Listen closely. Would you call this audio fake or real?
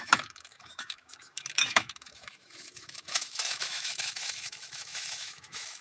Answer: fake